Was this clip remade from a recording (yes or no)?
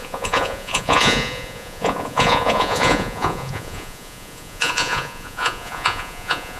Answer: yes